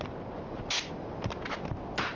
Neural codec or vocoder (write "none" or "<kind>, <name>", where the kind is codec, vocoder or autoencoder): none